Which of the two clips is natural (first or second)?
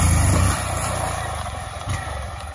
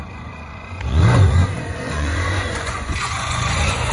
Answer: first